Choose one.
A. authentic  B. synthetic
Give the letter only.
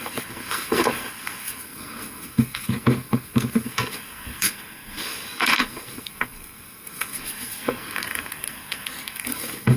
B